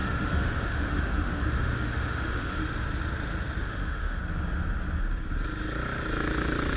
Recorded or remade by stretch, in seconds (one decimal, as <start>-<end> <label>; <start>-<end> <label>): 0.0-2.6 remade; 2.6-3.6 recorded; 3.6-4.2 remade; 4.2-6.8 recorded

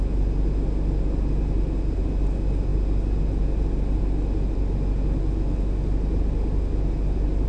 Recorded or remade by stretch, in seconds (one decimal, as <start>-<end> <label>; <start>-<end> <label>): 0.0-7.5 recorded

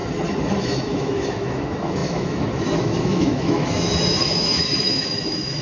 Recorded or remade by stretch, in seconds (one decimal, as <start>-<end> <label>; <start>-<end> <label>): 0.0-0.6 recorded; 0.6-5.6 remade

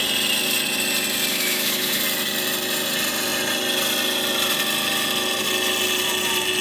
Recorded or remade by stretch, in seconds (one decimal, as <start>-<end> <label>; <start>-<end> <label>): 0.0-1.3 recorded; 1.3-2.0 remade; 2.0-6.6 recorded